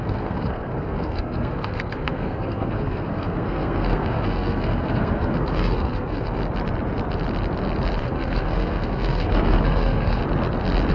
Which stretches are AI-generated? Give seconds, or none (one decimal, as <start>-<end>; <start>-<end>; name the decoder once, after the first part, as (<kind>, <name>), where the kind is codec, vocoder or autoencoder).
0.0-6.4 (codec, SNAC); 8.0-10.2